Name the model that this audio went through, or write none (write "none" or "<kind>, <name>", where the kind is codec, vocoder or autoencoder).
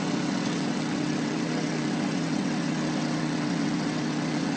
vocoder, WaveNeXt